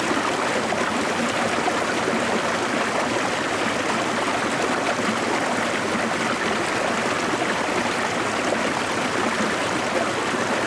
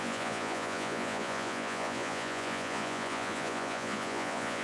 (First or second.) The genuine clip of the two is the first